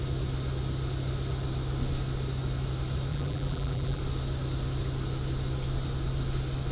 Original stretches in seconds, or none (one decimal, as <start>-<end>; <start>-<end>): 0.0-3.1; 4.0-6.7